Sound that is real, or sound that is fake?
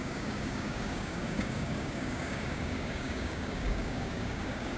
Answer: fake